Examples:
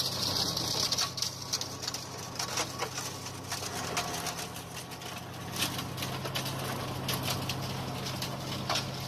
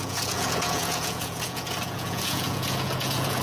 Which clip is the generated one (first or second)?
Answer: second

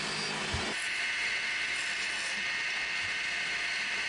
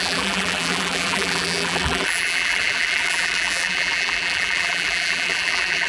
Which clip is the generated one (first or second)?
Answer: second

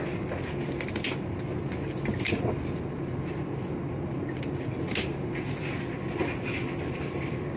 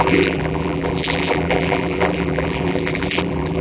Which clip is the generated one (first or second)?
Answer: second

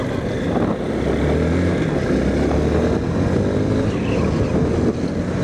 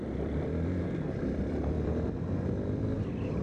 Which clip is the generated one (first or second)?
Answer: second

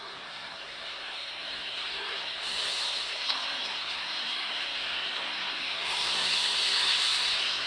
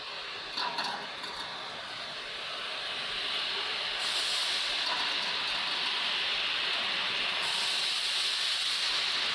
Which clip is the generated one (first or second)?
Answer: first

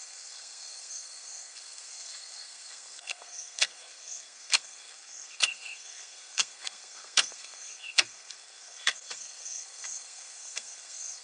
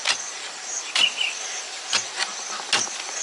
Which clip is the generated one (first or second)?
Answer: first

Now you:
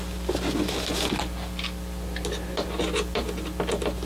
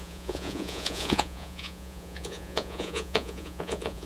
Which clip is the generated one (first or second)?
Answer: second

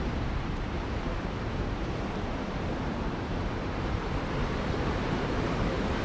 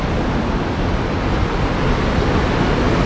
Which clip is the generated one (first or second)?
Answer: first